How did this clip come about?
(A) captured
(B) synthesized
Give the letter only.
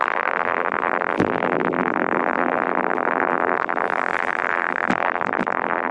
B